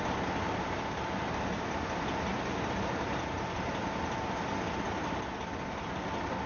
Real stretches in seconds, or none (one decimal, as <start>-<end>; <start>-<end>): 0.0-6.5